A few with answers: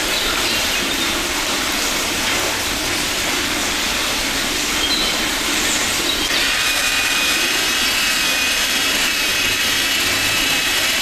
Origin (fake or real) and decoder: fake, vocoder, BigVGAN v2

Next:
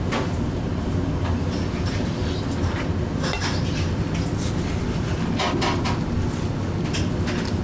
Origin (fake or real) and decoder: real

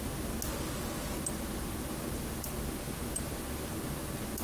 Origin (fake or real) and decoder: real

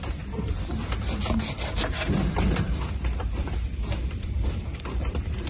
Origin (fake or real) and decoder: fake, vocoder, BigVGAN v2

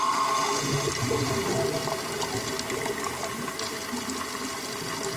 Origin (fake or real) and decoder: real